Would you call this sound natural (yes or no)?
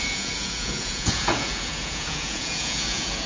no